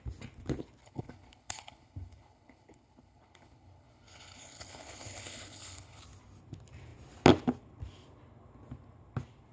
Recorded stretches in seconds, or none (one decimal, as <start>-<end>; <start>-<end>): 0.0-0.8; 6.0-9.5